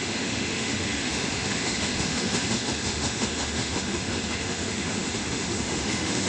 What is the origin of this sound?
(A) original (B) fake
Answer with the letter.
B